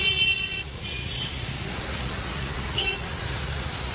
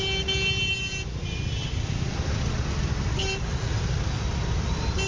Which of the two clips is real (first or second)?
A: second